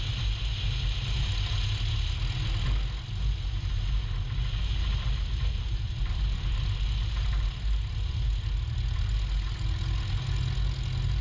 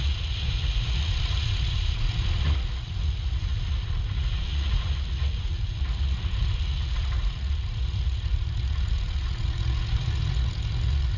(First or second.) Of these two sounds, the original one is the first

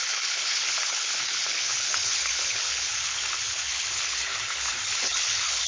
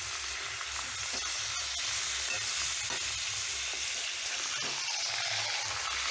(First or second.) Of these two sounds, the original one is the second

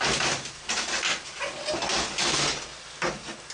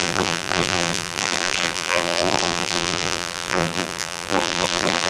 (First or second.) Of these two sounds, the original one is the first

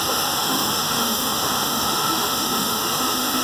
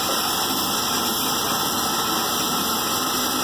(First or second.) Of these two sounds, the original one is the second